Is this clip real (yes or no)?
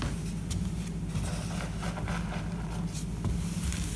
yes